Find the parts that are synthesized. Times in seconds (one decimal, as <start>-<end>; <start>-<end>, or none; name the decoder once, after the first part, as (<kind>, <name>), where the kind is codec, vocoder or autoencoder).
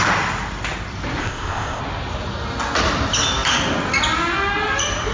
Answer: 1.2-1.8 (codec, ZipCodec)